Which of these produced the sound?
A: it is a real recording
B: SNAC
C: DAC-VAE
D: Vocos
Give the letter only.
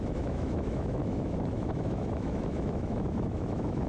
C